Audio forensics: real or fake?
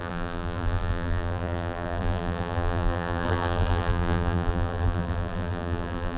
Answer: fake